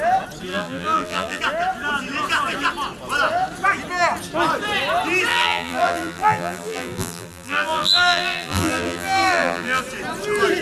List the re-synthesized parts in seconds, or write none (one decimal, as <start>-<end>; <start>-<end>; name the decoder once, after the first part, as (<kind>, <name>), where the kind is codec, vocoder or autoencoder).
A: 0.5-1.4 (vocoder, BigVGAN v2); 5.3-9.8